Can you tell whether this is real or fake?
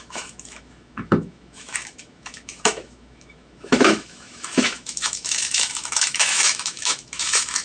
fake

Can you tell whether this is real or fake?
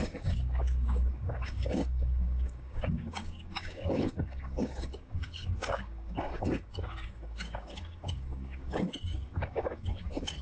fake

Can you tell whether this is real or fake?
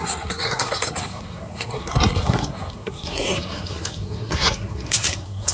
fake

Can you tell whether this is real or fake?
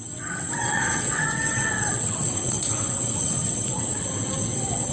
fake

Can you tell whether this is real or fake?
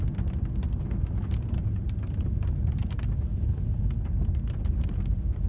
real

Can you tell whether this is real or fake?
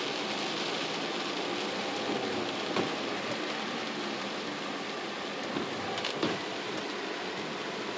real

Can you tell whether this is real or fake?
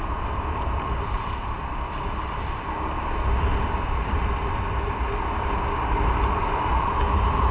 real